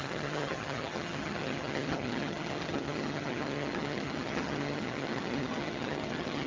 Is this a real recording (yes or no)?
no